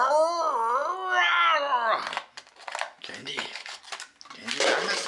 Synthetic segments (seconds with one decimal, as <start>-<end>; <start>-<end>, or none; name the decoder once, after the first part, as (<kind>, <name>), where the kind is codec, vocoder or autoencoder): 3.2-3.8 (codec, HILCodec)

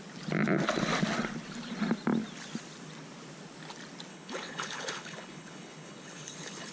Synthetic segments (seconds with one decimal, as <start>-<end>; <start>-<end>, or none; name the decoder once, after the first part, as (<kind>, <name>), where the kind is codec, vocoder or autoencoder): 4.1-6.7 (codec, HILCodec)

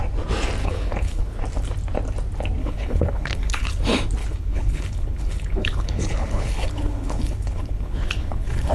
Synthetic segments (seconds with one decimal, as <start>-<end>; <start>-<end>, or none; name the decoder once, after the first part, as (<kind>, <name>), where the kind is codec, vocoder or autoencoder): 0.6-1.4 (codec, HILCodec); 2.6-3.8; 4.2-8.7

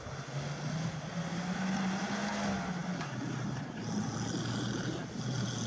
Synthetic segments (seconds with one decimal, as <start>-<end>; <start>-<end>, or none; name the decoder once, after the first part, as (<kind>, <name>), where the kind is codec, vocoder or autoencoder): none